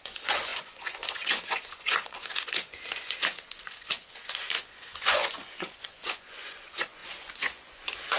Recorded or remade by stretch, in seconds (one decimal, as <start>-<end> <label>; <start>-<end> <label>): 0.0-8.2 remade